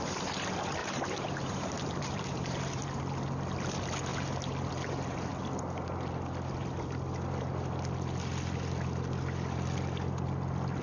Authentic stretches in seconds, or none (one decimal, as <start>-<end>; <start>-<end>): 0.0-0.8; 3.0-10.8